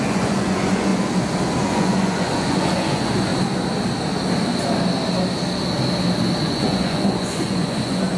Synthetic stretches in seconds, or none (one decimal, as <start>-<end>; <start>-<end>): 0.0-0.9; 1.6-3.3; 6.4-8.2